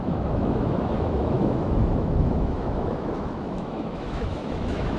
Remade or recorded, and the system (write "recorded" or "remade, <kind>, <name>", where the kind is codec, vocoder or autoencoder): remade, autoencoder, DAC-VAE